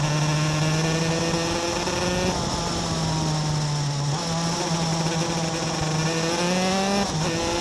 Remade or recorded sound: recorded